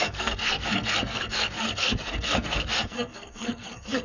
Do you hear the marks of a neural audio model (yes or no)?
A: yes